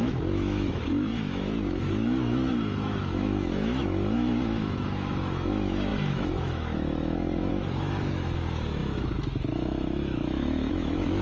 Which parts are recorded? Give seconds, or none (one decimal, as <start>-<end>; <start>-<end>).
none